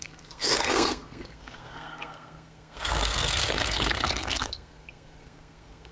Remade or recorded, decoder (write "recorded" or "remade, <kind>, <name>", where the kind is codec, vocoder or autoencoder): remade, codec, SNAC